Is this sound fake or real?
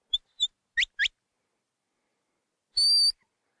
real